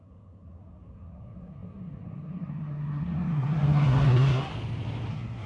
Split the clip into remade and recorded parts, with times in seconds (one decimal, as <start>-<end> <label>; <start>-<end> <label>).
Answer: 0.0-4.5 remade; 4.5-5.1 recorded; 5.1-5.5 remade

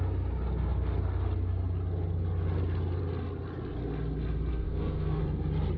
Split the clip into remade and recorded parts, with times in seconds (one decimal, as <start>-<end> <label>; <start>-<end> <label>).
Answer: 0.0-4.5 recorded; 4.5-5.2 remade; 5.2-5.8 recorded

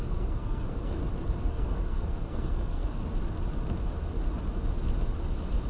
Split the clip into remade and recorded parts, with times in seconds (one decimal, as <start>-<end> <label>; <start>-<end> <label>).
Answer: 0.0-1.0 remade; 1.0-1.5 recorded; 1.5-3.0 remade; 3.0-5.7 recorded